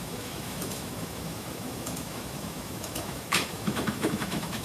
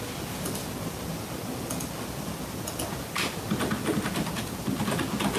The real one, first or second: second